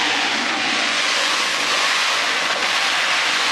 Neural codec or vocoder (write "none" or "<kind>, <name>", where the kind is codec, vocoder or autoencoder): vocoder, Vocos